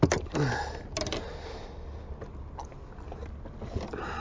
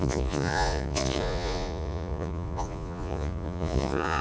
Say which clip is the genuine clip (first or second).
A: first